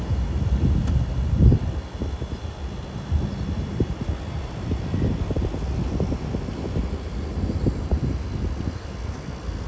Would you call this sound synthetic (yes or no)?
no